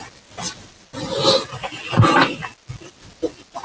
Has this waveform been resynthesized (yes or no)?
no